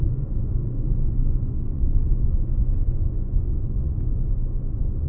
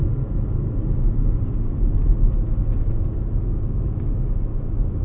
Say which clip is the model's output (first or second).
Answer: first